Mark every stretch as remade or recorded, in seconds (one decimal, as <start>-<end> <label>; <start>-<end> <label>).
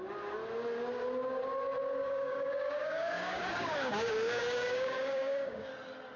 0.0-2.0 recorded; 2.0-5.7 remade; 5.7-6.2 recorded